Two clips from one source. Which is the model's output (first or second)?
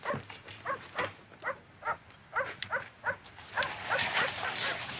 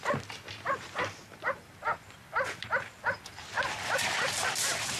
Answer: second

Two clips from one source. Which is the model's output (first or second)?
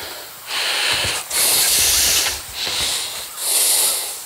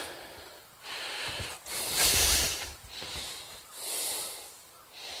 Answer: second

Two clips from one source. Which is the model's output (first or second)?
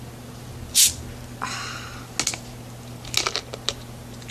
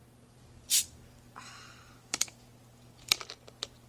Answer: second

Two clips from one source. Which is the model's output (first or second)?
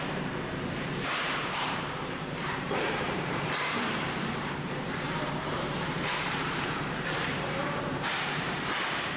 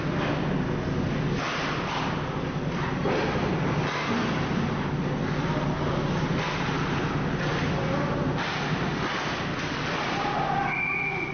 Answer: first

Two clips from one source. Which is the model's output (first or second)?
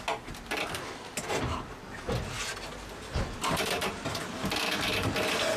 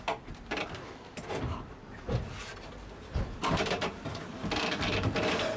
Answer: second